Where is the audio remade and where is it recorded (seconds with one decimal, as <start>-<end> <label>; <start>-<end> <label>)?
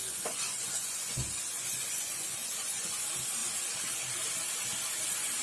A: 0.0-2.9 remade; 2.9-5.4 recorded